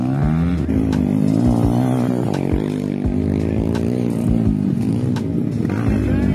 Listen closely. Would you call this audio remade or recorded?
recorded